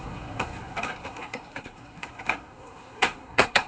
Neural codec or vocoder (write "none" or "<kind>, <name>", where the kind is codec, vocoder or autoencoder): codec, SNAC